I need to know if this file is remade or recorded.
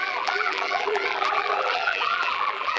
remade